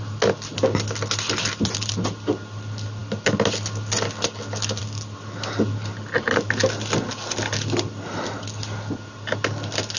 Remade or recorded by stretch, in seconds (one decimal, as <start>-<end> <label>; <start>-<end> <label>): 0.0-10.0 recorded